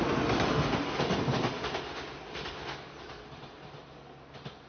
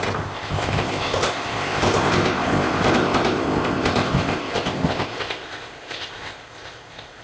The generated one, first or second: second